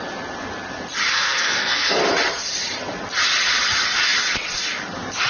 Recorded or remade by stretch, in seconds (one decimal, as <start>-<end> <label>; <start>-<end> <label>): 0.0-1.1 recorded; 1.1-2.0 remade; 2.0-5.3 recorded

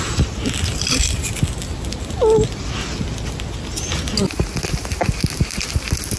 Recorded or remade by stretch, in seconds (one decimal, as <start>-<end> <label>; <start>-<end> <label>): 0.0-1.2 remade; 1.2-4.9 recorded; 4.9-6.2 remade

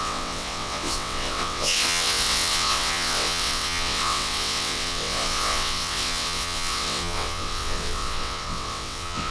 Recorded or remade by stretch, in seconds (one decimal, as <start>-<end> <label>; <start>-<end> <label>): 0.0-9.3 remade

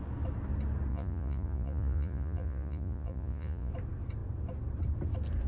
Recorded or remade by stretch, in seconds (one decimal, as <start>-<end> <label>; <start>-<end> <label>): 0.0-0.9 recorded; 0.9-3.7 remade; 3.7-5.5 recorded

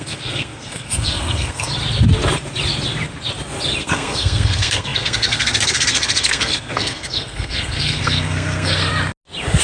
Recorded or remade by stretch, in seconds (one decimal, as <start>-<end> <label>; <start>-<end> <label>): 0.0-1.7 remade; 1.7-3.8 recorded; 3.8-8.9 remade; 8.9-9.6 recorded